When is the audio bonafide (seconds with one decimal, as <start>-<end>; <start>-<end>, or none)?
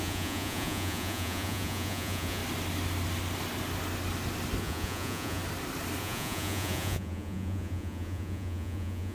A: 2.4-4.6; 5.4-6.0